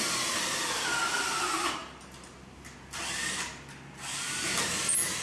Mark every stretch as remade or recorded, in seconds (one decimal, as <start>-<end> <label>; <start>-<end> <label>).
0.0-5.2 recorded